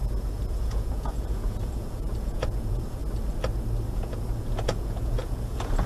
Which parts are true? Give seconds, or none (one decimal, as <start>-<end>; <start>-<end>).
3.0-3.9

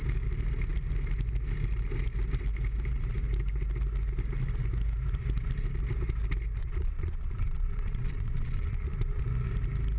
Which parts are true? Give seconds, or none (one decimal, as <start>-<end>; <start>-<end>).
0.0-6.6; 9.2-10.0

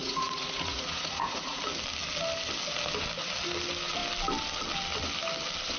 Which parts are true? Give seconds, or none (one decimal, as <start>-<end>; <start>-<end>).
1.6-5.8

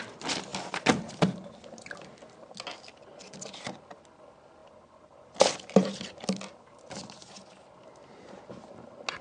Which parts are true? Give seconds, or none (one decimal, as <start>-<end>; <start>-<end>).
0.0-9.2

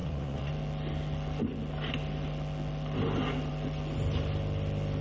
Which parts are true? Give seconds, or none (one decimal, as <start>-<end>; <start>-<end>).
0.5-5.0

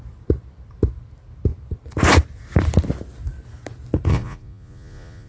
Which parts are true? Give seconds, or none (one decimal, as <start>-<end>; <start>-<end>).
0.0-4.1

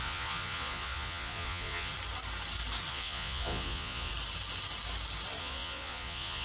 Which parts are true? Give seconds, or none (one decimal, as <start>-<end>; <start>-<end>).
1.9-2.9; 4.1-5.4

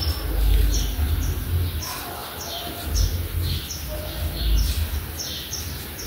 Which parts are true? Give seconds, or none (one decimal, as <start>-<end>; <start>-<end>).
0.0-6.1